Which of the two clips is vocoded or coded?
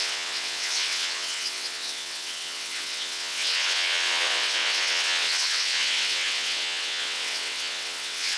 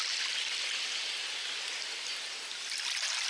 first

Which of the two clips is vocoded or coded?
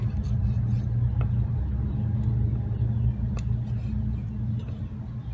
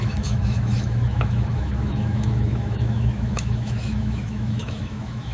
second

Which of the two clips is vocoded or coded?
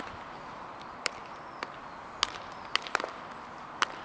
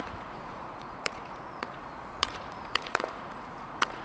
second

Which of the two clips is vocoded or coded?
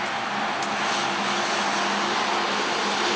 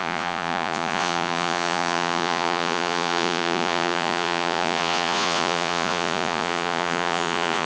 second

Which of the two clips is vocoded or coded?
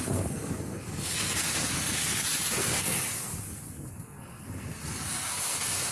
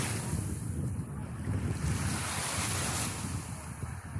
first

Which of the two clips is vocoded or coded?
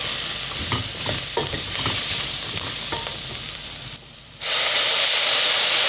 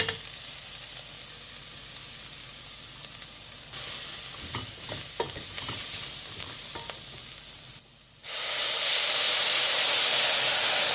first